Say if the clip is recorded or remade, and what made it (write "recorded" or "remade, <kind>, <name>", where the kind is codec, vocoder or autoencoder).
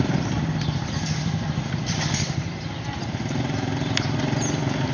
remade, vocoder, BigVGAN v2